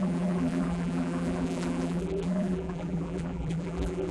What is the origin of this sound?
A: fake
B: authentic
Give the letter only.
A